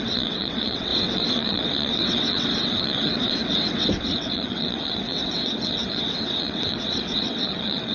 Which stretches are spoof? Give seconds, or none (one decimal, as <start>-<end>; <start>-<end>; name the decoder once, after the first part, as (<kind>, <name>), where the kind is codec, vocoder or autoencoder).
0.0-7.9 (vocoder, WaveNeXt)